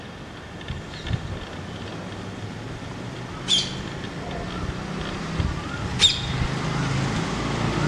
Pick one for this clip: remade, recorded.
recorded